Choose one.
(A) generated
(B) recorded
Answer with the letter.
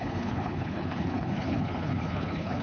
A